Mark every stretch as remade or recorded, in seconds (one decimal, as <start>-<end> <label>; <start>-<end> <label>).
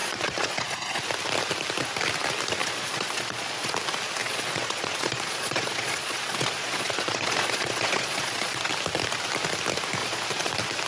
0.0-1.0 remade; 1.0-2.6 recorded; 2.6-3.7 remade; 3.7-4.2 recorded; 4.2-8.7 remade; 8.7-10.0 recorded; 10.0-10.5 remade; 10.5-10.9 recorded